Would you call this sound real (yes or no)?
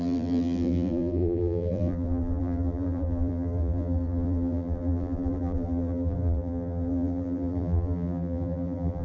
no